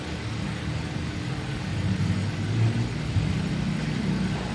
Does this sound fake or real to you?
fake